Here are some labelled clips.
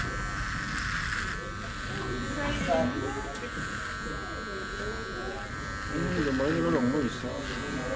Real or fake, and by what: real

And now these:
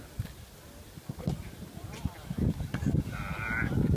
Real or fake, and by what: real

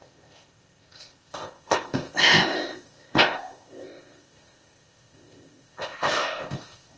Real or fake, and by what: fake, codec, ZipCodec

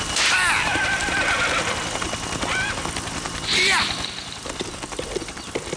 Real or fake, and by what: fake, vocoder, BigVGAN v2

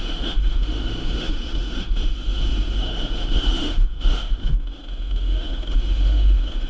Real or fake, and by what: fake, autoencoder, DAC-VAE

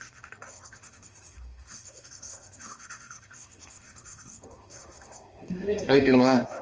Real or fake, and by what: fake, codec, SNAC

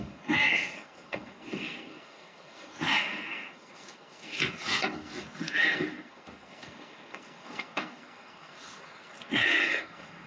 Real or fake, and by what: fake, codec, SNAC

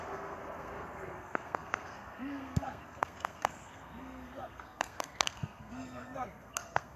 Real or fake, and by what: fake, codec, SNAC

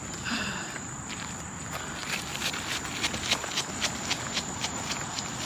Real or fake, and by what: real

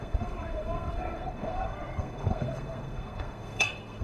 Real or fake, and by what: fake, codec, SNAC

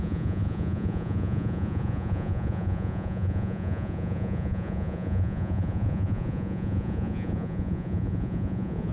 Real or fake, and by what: fake, vocoder, Vocos